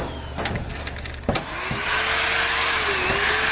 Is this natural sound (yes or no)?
yes